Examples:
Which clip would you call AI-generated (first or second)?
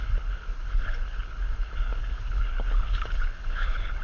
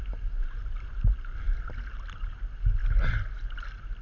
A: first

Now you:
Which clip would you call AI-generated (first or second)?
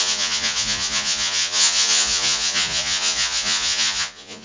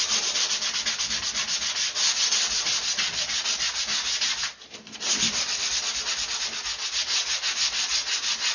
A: first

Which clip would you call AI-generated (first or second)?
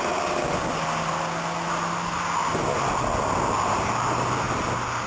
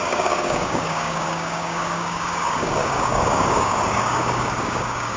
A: second